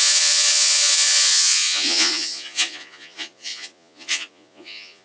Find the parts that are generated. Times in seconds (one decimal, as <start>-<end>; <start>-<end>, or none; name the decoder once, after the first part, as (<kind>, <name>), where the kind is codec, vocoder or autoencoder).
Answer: 0.0-5.0 (vocoder, Vocos)